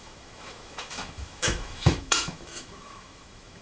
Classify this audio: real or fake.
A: fake